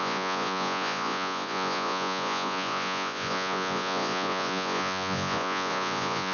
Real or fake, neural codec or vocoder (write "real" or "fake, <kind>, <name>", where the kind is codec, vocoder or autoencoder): fake, vocoder, Vocos